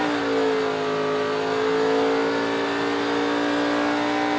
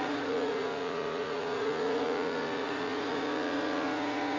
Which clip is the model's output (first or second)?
second